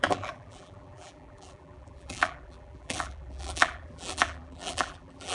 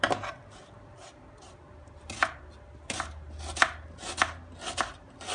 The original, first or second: second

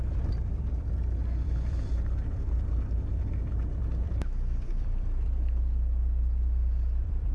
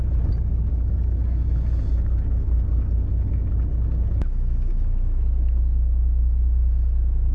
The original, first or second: second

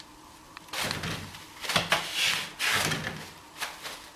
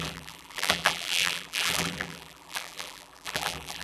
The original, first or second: first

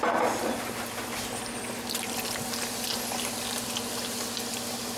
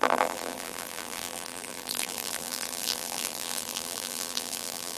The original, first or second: first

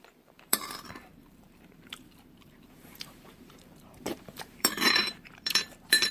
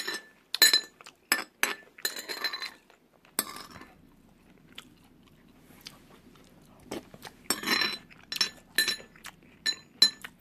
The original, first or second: second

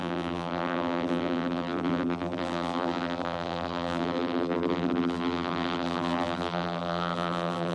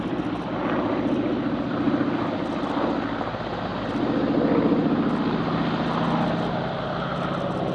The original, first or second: second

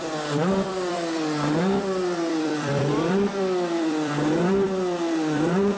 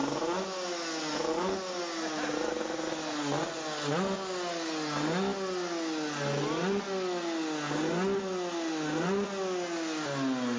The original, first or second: second